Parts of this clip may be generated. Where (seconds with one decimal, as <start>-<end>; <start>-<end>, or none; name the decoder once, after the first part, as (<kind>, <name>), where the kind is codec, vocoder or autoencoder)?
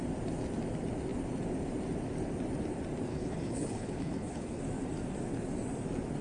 3.1-4.6 (codec, HILCodec)